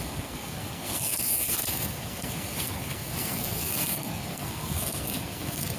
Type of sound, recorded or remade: remade